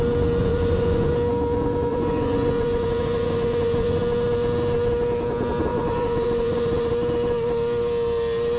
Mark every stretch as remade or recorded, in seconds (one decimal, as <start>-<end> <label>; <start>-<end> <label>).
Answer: 0.0-0.4 recorded; 0.4-1.1 remade; 1.1-1.9 recorded; 1.9-4.0 remade; 4.0-5.7 recorded; 5.7-6.9 remade; 6.9-8.6 recorded